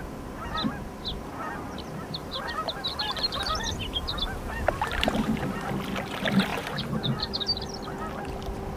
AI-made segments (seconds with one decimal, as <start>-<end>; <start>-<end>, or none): 2.2-4.1; 6.5-7.4